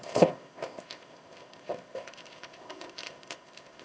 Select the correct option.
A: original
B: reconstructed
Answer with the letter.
B